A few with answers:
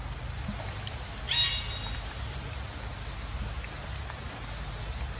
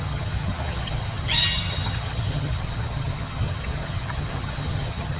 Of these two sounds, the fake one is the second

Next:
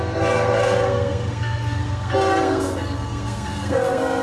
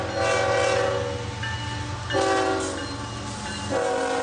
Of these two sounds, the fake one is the first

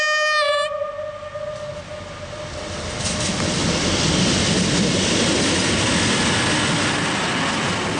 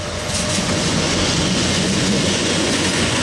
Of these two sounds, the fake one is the second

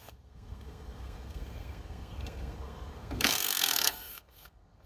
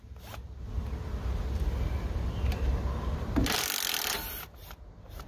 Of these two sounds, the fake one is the first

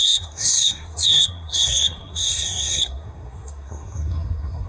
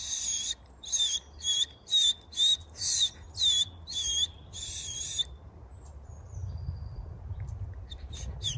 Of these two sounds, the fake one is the first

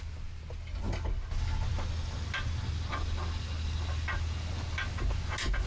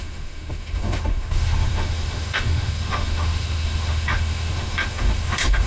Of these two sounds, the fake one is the second